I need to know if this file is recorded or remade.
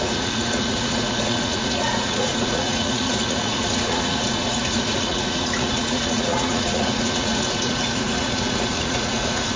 remade